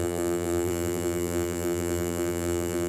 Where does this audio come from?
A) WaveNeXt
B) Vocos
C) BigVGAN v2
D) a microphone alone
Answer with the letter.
C